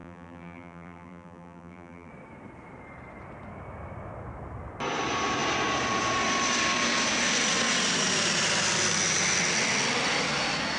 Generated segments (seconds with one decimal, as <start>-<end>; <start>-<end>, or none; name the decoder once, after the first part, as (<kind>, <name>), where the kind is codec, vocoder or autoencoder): 0.0-2.1 (vocoder, BigVGAN v2)